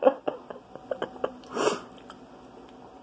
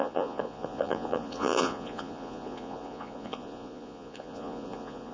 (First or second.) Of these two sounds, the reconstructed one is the second